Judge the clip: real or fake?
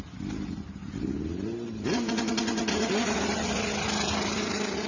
real